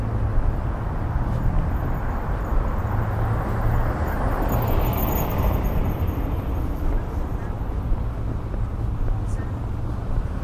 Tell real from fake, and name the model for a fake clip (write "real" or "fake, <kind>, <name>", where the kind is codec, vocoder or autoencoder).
real